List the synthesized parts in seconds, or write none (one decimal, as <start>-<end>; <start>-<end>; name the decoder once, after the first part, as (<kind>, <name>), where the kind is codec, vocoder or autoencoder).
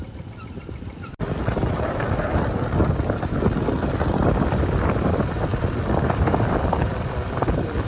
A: 0.0-1.4 (vocoder, BigVGAN v2); 4.6-7.9